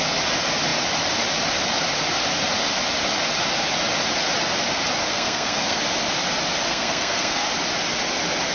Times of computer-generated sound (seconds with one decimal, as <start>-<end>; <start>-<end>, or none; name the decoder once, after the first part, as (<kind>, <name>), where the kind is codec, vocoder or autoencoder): 5.1-5.8 (codec, SNAC); 6.7-7.5